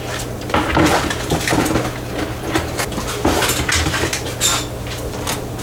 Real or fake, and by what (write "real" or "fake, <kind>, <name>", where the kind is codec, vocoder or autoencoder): real